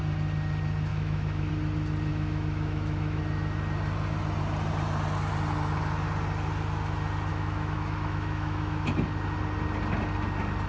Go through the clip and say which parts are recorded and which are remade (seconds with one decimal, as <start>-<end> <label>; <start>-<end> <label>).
0.0-0.9 recorded; 0.9-1.5 remade; 1.5-2.1 recorded; 2.1-3.2 remade; 3.2-7.3 recorded; 7.3-8.9 remade; 8.9-10.7 recorded